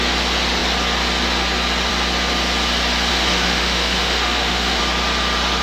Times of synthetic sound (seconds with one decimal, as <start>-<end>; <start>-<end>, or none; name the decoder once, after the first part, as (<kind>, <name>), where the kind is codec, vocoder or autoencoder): 3.1-4.8 (autoencoder, DAC-VAE)